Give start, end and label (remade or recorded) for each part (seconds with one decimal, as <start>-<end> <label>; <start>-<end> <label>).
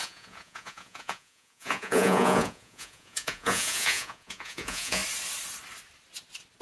0.0-5.0 remade; 5.0-6.6 recorded